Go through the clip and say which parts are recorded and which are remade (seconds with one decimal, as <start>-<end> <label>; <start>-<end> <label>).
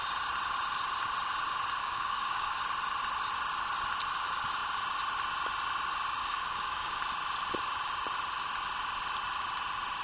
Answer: 0.0-1.8 recorded; 1.8-2.6 remade; 2.6-6.2 recorded; 6.2-7.0 remade; 7.0-10.0 recorded